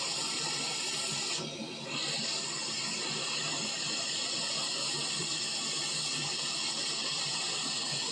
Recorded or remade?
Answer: recorded